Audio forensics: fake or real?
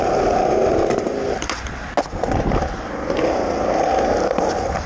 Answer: real